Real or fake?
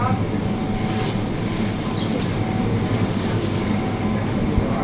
real